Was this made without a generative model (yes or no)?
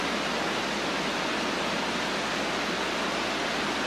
yes